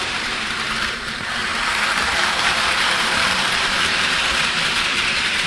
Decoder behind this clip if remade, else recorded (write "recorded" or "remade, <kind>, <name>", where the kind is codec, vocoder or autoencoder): remade, vocoder, BigVGAN v2